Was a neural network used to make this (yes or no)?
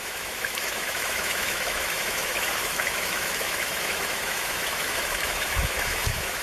yes